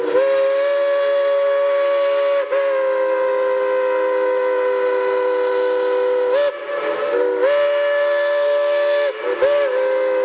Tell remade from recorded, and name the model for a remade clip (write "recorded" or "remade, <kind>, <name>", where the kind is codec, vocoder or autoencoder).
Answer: recorded